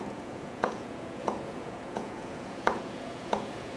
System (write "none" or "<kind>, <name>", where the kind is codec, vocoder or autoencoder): vocoder, Vocos